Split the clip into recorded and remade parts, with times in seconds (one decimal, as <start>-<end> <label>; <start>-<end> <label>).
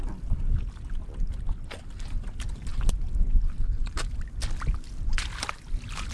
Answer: 0.0-6.1 recorded